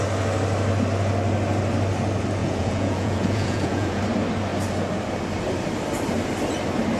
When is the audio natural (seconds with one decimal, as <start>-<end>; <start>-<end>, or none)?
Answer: 0.0-2.4; 4.0-7.0